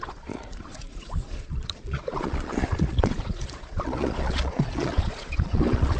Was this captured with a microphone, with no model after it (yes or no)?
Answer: no